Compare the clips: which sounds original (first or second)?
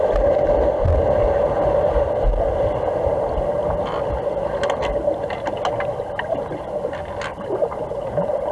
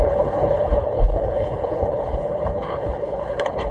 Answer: first